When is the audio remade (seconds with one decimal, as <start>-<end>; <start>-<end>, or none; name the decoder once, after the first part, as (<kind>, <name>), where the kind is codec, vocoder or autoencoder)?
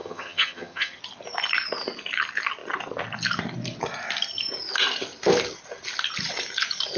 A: 0.0-1.0 (vocoder, HiFi-GAN)